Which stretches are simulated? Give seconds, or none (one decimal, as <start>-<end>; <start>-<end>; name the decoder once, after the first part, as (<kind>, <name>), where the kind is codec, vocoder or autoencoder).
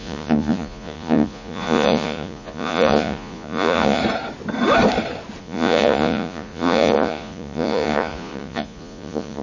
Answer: 0.0-4.0 (vocoder, Vocos); 5.4-9.4